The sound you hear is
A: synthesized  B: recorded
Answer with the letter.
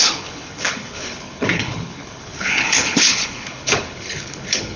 A